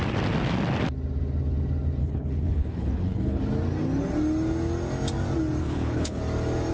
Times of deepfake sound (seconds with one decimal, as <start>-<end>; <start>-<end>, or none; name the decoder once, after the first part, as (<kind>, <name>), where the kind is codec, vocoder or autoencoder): 2.0-3.4 (codec, HILCodec); 5.6-6.2